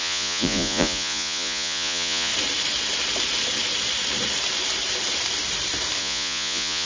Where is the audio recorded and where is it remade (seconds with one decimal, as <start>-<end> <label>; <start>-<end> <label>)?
0.0-2.3 remade; 2.3-6.0 recorded; 6.0-6.9 remade